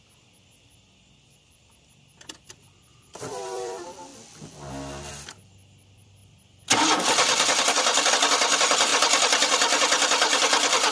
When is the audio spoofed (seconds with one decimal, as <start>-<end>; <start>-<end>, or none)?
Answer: 0.0-4.1; 5.1-10.9